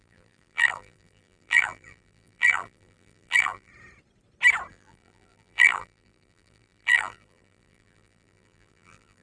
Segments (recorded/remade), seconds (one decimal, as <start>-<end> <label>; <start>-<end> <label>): 0.0-3.7 remade; 3.7-4.7 recorded; 4.7-9.2 remade